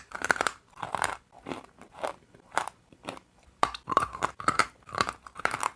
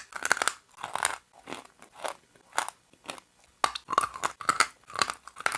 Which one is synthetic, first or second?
first